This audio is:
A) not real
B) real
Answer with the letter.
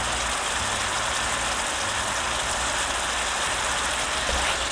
B